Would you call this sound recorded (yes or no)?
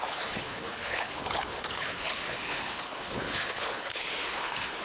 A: no